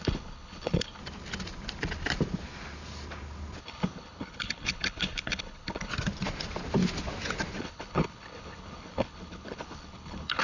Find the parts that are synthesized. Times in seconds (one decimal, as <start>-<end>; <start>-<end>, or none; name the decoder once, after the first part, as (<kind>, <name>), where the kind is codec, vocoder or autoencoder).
0.0-1.0 (codec, HILCodec); 3.6-5.9; 7.6-10.4